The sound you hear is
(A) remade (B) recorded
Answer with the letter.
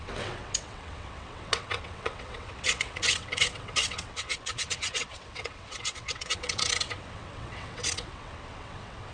A